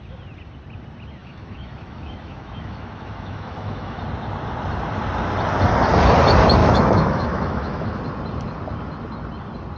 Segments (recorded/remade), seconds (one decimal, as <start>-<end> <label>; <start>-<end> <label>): 0.0-1.2 recorded; 1.2-4.0 remade; 4.0-6.6 recorded; 6.6-8.0 remade; 8.0-9.8 recorded